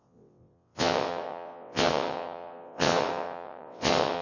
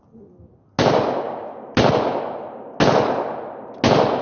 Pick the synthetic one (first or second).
first